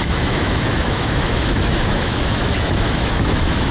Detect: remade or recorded remade